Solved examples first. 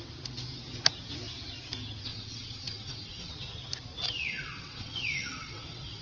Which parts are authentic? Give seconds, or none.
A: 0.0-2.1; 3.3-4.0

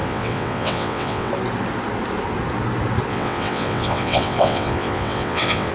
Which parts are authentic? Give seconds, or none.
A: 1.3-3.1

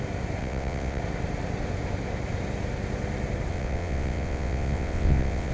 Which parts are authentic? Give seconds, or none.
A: 0.0-0.4; 1.0-3.5

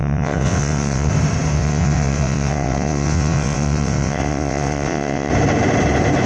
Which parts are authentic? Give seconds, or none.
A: 1.1-1.5; 5.3-6.3

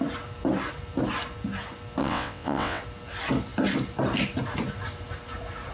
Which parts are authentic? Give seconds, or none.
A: 0.0-2.0; 2.8-5.7